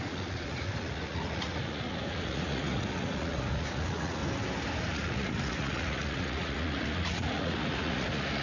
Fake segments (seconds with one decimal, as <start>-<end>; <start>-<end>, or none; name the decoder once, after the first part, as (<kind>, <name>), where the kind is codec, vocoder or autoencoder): 0.0-4.2 (vocoder, Vocos); 4.8-8.4